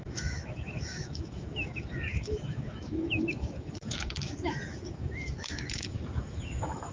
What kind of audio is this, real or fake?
fake